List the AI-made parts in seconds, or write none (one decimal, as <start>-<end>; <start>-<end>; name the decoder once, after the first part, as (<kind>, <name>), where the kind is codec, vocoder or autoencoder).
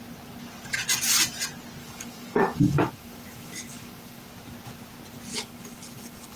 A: 1.8-4.3 (codec, DAC); 5.3-6.4